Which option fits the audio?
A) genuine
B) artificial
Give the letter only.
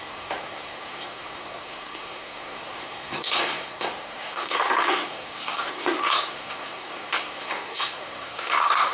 B